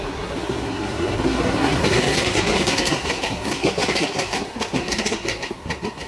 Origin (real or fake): fake